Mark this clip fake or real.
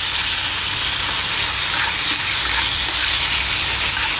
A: real